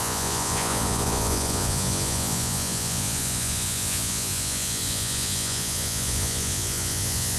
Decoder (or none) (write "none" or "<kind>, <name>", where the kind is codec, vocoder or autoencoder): vocoder, Vocos